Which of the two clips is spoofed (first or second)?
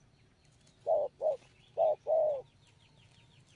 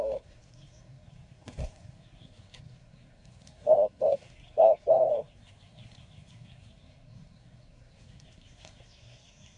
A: second